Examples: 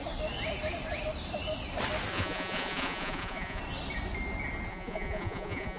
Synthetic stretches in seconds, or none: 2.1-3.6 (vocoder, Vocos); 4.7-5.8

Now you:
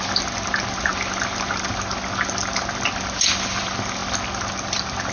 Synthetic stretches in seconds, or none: none

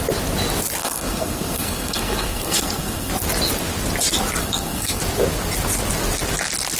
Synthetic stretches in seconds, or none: 0.8-3.1 (codec, SNAC); 4.4-5.0

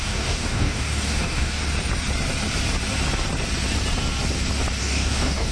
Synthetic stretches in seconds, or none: 0.0-1.6 (codec, DAC); 4.8-5.5

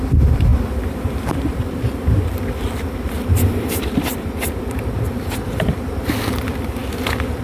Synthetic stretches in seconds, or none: 0.0-0.5 (vocoder, BigVGAN v2); 1.9-6.8

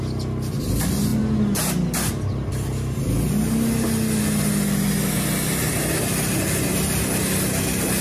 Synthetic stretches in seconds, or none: none

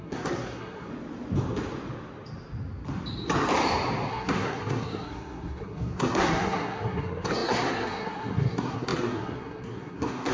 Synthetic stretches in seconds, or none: 0.0-0.9 (codec, SNAC); 4.1-10.3